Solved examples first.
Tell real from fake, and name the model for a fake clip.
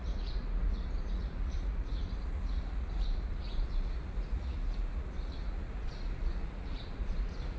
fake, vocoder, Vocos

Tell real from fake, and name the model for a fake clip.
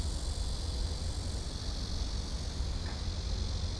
real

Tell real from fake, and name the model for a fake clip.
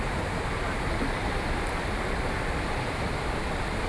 fake, vocoder, BigVGAN v2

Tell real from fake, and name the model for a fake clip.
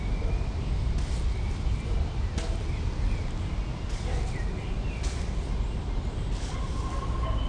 real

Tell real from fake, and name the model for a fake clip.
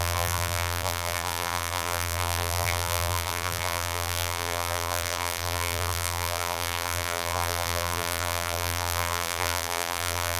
fake, vocoder, BigVGAN v2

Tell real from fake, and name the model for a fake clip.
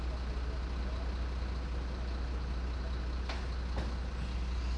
real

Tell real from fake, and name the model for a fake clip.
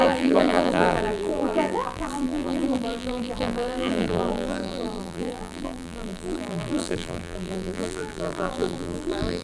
fake, vocoder, BigVGAN v2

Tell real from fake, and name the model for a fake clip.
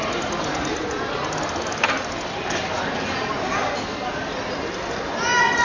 real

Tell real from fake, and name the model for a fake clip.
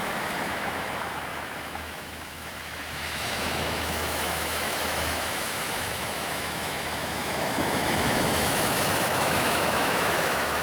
fake, autoencoder, DAC-VAE